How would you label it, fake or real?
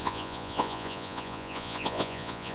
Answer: fake